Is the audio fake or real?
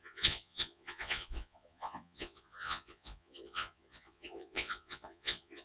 fake